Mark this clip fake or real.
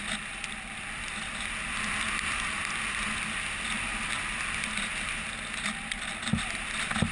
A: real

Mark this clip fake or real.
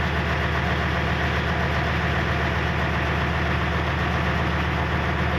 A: real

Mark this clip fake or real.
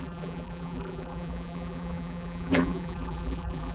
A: fake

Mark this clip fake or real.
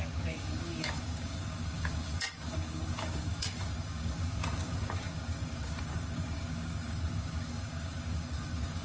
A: fake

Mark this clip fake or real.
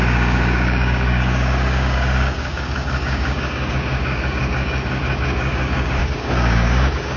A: fake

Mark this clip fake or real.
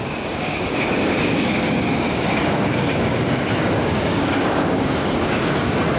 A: fake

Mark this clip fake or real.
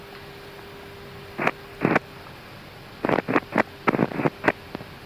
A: real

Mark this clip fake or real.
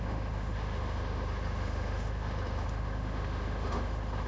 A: fake